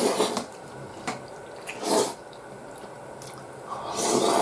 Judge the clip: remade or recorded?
recorded